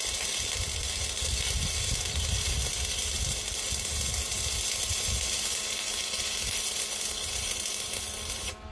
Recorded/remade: recorded